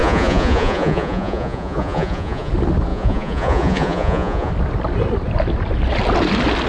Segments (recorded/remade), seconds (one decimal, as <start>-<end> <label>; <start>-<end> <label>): 0.0-2.5 remade; 2.5-2.9 recorded; 2.9-4.5 remade; 4.5-6.7 recorded